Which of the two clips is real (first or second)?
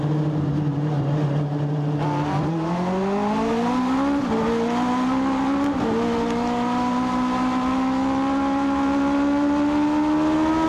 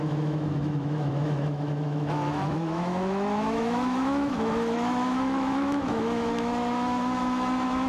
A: first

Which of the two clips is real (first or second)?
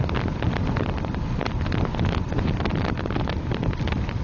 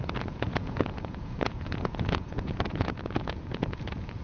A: first